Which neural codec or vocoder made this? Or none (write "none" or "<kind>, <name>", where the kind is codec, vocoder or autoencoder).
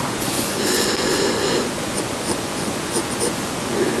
vocoder, Vocos